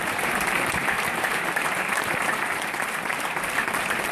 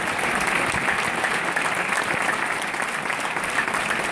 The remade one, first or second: first